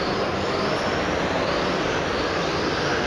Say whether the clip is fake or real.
real